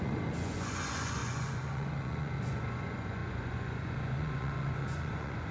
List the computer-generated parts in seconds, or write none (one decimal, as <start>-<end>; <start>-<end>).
0.0-5.5